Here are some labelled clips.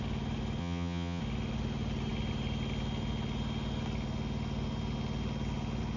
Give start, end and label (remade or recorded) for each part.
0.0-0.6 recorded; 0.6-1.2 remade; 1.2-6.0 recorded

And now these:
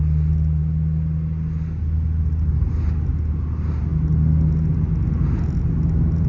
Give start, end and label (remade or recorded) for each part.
0.0-6.3 recorded

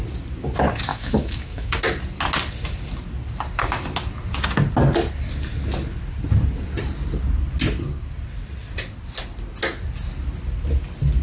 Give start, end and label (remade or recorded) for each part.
0.0-0.9 recorded; 0.9-1.8 remade; 1.8-11.2 recorded

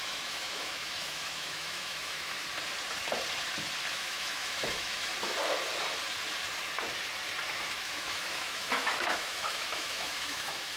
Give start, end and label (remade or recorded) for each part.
0.0-2.4 remade; 2.4-3.9 recorded; 3.9-5.1 remade; 5.1-7.5 recorded; 7.5-10.8 remade

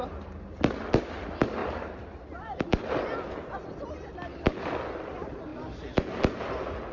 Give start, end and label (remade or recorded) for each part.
0.0-1.6 recorded; 1.6-2.9 remade; 2.9-6.9 recorded

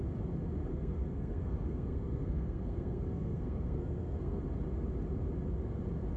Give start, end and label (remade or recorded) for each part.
0.0-0.7 recorded; 0.7-4.4 remade; 4.4-6.2 recorded

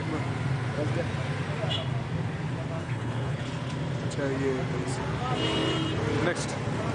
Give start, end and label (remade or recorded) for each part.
0.0-2.8 recorded; 2.8-3.4 remade; 3.4-6.9 recorded

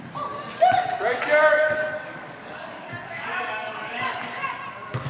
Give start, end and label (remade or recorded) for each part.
0.0-1.5 recorded; 1.5-4.6 remade; 4.6-5.1 recorded